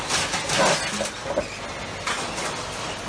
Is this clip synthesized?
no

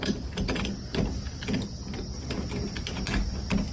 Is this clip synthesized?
no